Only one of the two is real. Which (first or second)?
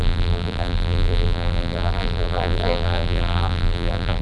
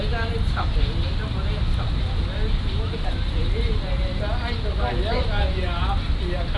second